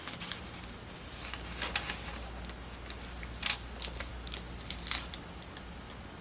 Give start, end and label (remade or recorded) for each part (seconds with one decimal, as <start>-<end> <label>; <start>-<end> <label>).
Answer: 0.0-6.2 recorded